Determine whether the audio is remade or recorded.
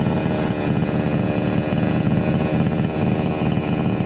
remade